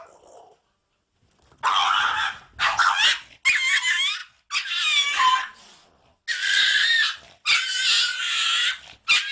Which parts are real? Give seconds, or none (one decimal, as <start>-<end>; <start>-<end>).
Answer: 0.0-9.3